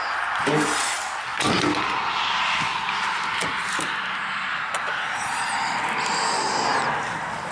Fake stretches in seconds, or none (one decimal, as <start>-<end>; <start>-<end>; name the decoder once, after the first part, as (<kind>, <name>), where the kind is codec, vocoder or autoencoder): none